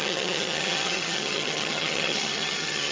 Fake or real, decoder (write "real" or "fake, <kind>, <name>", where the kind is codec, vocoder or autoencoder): fake, vocoder, HiFi-GAN